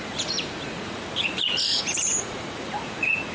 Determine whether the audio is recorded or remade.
remade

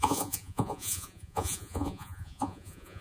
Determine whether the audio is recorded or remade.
remade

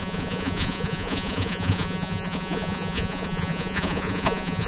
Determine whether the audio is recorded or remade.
remade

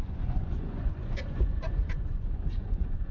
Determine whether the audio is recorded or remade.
remade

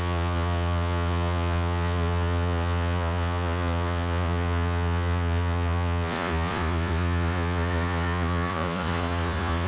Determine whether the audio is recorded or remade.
remade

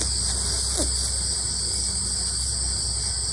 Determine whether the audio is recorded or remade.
recorded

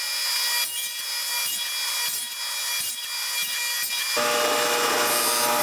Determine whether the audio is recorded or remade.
recorded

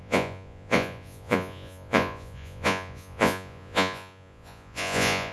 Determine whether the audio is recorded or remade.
remade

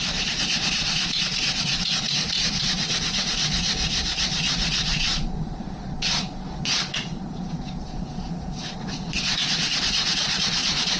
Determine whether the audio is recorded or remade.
remade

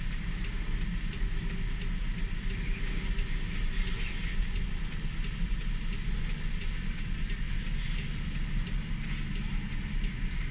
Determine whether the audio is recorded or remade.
recorded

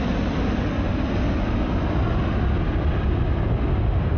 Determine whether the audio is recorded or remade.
recorded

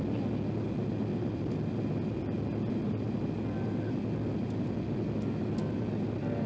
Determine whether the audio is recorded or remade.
recorded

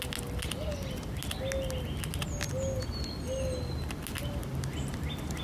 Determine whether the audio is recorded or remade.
recorded